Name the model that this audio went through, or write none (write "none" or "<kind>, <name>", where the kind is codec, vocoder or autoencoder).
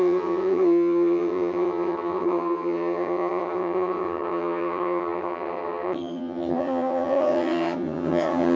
vocoder, HiFi-GAN